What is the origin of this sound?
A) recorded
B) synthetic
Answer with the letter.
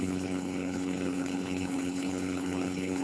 B